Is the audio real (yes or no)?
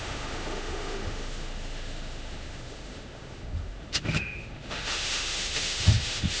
no